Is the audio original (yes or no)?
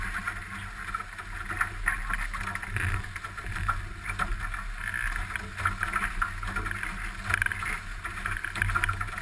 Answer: yes